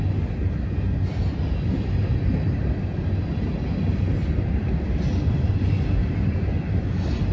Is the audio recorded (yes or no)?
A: yes